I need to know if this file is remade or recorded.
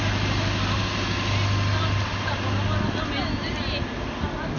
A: recorded